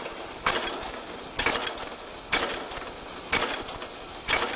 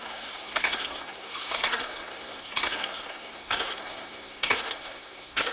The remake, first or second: second